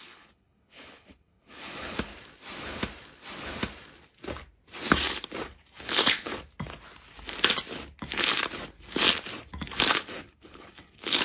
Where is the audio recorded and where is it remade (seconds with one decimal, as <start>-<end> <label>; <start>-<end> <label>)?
0.0-2.1 remade; 2.1-5.8 recorded; 5.8-6.3 remade; 6.3-9.9 recorded; 9.9-11.2 remade